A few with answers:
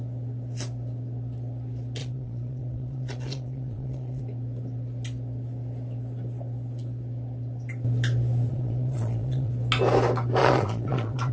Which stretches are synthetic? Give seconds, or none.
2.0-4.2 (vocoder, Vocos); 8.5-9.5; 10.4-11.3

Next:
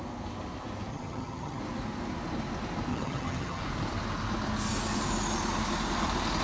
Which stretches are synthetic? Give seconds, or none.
0.9-1.6 (vocoder, HiFi-GAN); 2.9-3.6

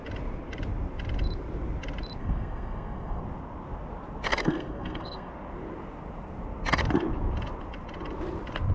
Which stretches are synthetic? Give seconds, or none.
2.2-3.2 (codec, SNAC); 4.3-5.3